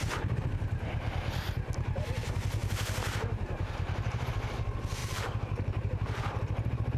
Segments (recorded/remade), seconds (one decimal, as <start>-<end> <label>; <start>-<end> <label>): 0.0-5.0 recorded; 5.0-7.0 remade